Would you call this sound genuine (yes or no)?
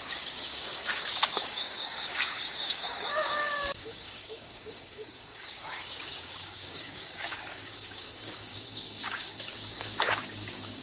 no